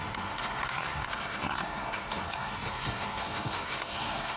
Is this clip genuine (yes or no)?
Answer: no